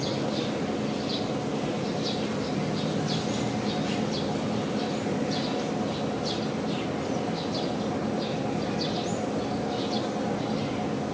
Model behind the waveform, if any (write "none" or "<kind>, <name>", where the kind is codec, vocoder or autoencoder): none